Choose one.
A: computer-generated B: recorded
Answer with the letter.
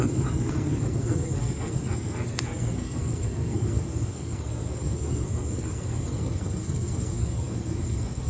A